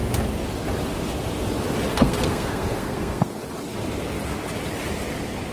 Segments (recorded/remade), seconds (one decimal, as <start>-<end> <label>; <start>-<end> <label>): 0.0-1.9 recorded; 1.9-3.4 remade; 3.4-5.5 recorded